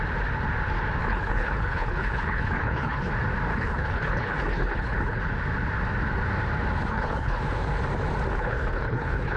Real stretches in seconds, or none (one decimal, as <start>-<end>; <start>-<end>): 0.0-1.0; 3.1-3.5; 5.2-6.9; 7.4-8.3